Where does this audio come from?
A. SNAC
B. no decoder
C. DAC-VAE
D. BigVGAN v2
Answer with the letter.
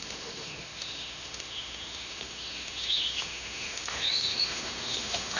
C